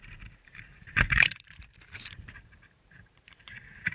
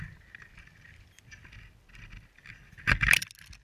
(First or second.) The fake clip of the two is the first